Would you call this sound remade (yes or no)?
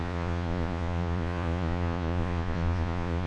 yes